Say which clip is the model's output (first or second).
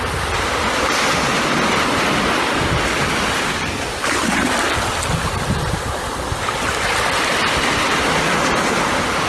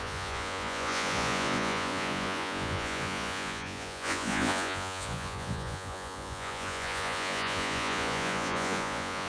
second